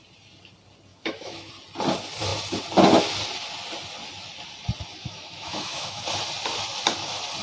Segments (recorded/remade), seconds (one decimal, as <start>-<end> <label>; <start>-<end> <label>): 0.0-0.9 recorded; 0.9-1.5 remade; 1.5-5.0 recorded; 5.0-6.0 remade; 6.0-7.4 recorded